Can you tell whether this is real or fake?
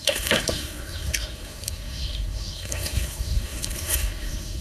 fake